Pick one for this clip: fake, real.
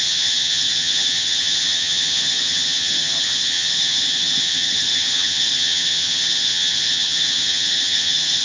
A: fake